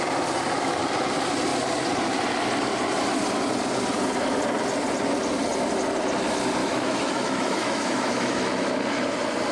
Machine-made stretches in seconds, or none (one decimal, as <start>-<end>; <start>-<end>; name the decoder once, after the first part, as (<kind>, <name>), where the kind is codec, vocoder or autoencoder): 6.6-8.8 (autoencoder, DAC-VAE)